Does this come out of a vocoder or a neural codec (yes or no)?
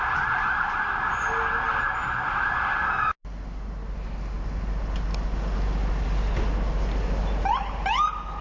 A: no